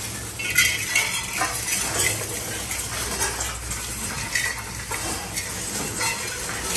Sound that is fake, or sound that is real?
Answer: real